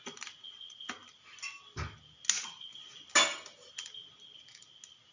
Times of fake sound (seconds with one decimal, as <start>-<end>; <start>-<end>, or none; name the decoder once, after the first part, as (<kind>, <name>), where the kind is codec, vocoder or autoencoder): none